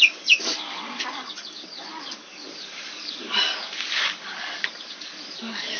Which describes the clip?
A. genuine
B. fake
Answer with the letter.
B